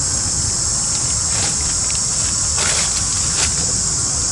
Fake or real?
real